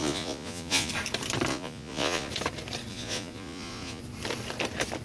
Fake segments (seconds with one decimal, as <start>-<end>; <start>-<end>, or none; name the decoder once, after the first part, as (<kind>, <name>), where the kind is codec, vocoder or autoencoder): 0.0-0.9 (vocoder, Vocos); 1.5-2.3; 2.9-4.0